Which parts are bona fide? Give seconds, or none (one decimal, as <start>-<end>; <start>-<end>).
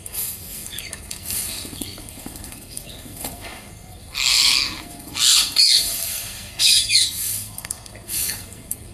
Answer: none